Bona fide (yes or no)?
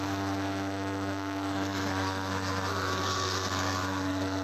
no